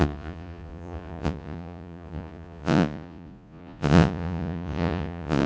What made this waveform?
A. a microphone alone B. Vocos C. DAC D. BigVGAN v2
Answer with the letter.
B